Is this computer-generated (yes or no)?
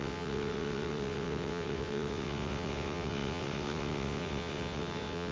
yes